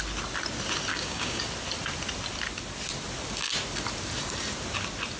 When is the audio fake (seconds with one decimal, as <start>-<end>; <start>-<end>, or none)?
0.9-1.4